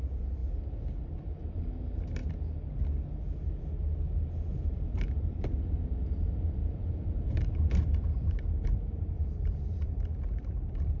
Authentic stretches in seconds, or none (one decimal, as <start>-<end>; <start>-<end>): 0.0-4.5; 5.4-6.6